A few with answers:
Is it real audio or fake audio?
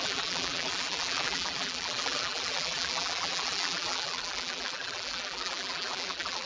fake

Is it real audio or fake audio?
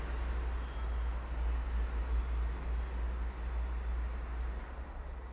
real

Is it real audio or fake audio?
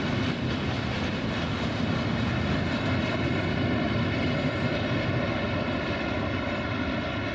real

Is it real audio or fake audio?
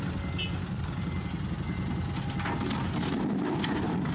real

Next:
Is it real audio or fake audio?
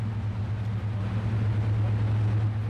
real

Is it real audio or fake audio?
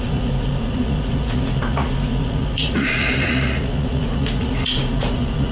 fake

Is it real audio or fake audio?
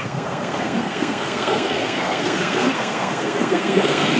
fake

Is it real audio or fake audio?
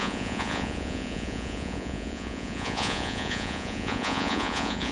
fake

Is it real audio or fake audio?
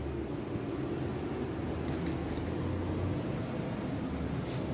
real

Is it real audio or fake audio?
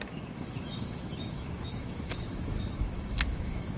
fake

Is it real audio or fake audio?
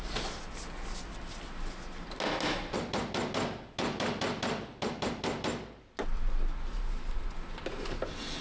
real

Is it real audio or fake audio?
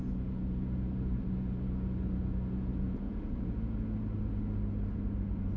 fake